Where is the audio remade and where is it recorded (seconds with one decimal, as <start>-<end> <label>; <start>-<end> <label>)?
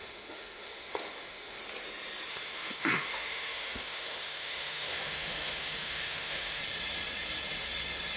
0.0-1.6 remade; 1.6-2.3 recorded; 2.3-6.6 remade; 6.6-8.2 recorded